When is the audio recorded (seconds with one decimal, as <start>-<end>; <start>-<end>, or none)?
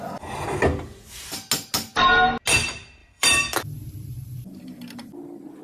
0.0-3.0; 5.1-5.6